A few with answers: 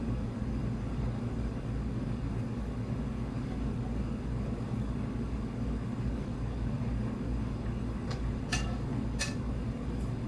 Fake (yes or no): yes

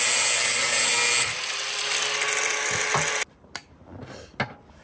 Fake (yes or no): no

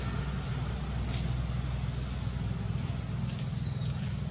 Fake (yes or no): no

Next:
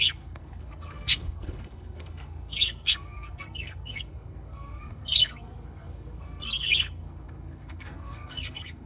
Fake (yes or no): yes